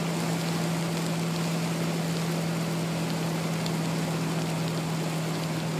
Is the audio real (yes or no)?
yes